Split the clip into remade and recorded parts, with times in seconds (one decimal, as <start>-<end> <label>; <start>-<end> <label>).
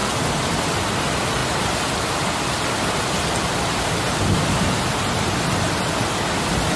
0.0-6.8 recorded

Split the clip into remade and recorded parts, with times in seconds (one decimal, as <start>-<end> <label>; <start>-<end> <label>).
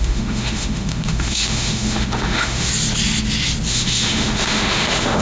0.0-2.7 remade; 2.7-3.7 recorded; 3.7-5.2 remade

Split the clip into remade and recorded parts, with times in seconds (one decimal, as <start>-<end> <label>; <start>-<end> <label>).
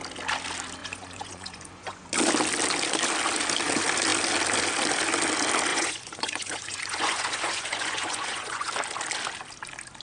0.0-0.8 recorded; 0.8-2.1 remade; 2.1-5.7 recorded; 5.7-8.7 remade; 8.7-10.0 recorded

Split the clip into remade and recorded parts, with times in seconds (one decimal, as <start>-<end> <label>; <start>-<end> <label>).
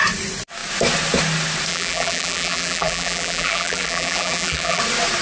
0.0-1.7 recorded; 1.7-4.8 remade; 4.8-5.2 recorded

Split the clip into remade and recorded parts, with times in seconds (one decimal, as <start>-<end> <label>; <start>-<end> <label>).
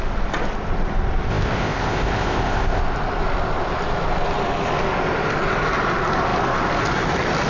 0.0-1.3 recorded; 1.3-2.8 remade; 2.8-7.5 recorded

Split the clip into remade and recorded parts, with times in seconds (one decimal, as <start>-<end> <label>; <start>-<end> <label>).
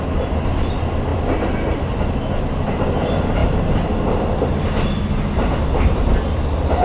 0.0-1.1 recorded; 1.1-1.8 remade; 1.8-6.8 recorded